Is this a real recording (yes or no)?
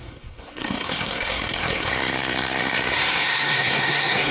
no